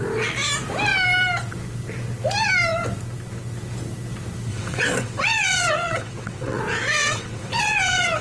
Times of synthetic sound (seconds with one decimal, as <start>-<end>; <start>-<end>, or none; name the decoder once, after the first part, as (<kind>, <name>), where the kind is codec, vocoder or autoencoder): 4.5-6.6 (vocoder, WaveNeXt); 7.0-8.2